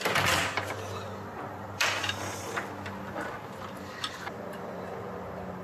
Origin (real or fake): real